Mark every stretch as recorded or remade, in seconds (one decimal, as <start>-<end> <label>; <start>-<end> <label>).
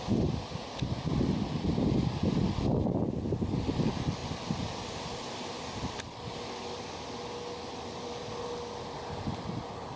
0.0-10.0 recorded